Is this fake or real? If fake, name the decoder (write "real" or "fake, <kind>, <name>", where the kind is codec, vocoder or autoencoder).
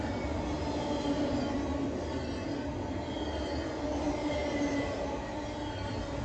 real